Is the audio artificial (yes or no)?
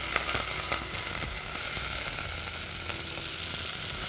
no